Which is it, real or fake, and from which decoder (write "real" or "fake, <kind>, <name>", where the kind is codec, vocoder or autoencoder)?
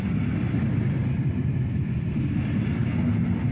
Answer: real